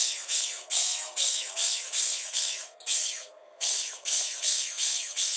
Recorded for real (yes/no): no